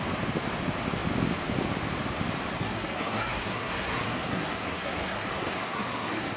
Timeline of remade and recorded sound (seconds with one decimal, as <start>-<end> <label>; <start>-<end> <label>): 0.0-2.5 recorded; 2.5-6.4 remade